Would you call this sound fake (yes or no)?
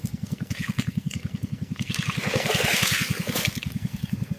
yes